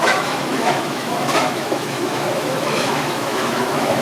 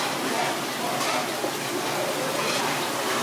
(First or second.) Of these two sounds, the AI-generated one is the first